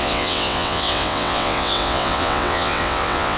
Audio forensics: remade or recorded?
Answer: remade